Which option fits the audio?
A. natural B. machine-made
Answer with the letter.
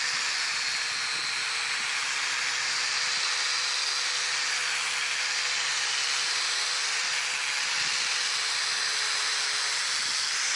A